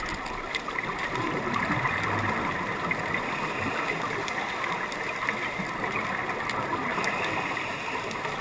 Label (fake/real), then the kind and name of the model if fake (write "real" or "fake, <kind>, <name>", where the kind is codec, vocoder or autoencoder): real